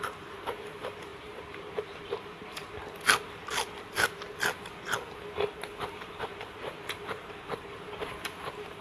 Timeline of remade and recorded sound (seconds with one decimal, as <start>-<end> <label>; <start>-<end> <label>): 0.0-2.8 remade; 2.8-5.8 recorded; 5.8-8.8 remade

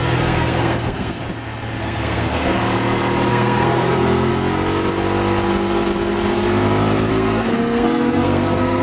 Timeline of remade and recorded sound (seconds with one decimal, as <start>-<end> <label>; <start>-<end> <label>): 0.0-1.2 remade; 1.2-1.8 recorded; 1.8-2.6 remade; 2.6-3.3 recorded; 3.3-4.3 remade; 4.3-7.1 recorded; 7.1-8.8 remade

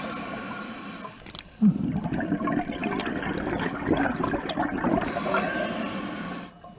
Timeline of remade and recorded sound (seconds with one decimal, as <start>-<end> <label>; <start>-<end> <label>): 0.0-6.8 recorded

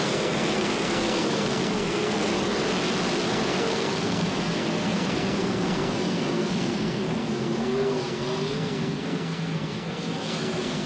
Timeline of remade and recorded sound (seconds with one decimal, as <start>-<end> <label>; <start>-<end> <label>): 0.0-2.6 remade; 2.6-3.3 recorded; 3.3-10.9 remade

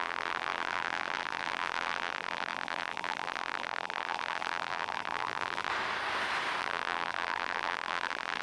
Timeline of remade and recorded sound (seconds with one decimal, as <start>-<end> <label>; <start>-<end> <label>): 0.0-5.7 remade; 5.7-6.6 recorded; 6.6-8.4 remade

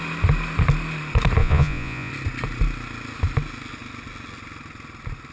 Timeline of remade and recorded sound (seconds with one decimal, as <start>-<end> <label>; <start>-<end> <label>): 0.0-1.4 recorded; 1.4-2.1 remade; 2.1-5.3 recorded